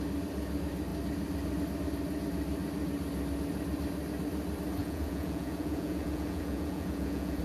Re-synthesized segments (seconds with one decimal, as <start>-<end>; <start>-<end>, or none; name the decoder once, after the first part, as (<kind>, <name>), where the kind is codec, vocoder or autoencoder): 4.8-7.4 (vocoder, Vocos)